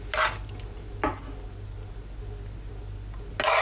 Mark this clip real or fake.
real